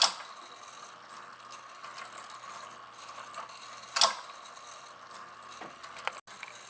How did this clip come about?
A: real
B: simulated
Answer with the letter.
A